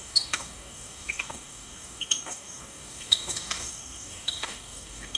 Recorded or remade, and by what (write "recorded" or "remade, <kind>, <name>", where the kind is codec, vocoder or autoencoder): remade, codec, DAC